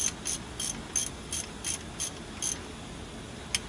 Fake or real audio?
real